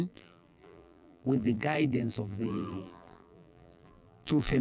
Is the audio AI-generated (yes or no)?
yes